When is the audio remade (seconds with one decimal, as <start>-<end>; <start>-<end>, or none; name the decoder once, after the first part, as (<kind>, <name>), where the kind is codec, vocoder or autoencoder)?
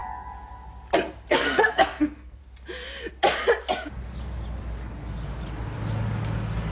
1.3-2.4 (codec, SNAC)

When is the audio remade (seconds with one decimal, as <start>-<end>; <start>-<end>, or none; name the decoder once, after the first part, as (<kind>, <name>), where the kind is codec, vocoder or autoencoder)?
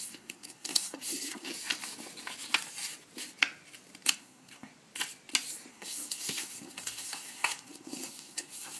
0.0-1.5 (codec, SNAC); 4.1-4.7; 5.7-8.8